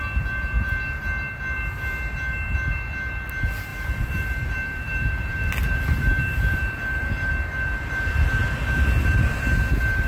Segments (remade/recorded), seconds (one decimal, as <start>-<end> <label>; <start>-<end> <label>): 0.0-3.7 recorded; 3.7-7.3 remade; 7.3-8.4 recorded; 8.4-9.4 remade; 9.4-10.1 recorded